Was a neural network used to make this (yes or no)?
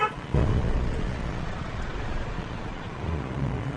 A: yes